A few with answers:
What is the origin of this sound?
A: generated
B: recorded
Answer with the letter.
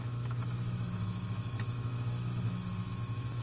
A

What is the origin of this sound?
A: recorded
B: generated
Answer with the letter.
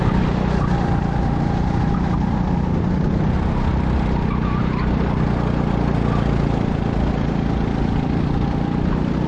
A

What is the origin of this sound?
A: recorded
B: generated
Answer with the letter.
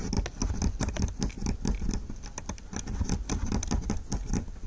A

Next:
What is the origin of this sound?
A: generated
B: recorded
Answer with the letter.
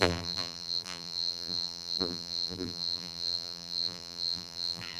A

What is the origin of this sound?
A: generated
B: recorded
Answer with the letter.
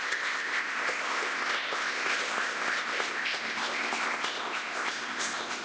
A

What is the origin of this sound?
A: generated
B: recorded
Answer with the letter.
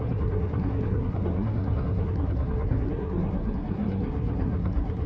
A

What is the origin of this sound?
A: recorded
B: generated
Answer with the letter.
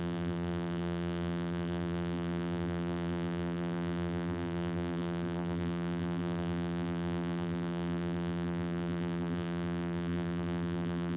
B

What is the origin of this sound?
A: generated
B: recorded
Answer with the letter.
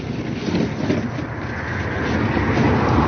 B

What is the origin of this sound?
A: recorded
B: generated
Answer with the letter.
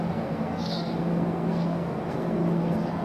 B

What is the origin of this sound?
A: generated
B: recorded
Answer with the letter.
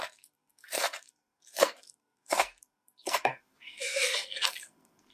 A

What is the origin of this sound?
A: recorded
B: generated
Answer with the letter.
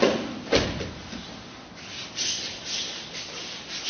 A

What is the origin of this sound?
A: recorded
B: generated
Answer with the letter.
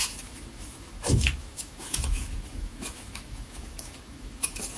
B